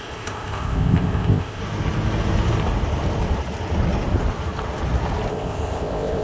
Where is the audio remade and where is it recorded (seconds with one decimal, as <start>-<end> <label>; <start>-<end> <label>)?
0.0-1.6 remade; 1.6-5.3 recorded; 5.3-6.2 remade